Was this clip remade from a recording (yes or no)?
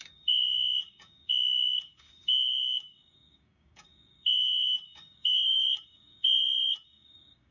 yes